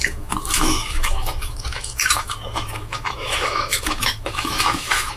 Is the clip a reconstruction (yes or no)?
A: yes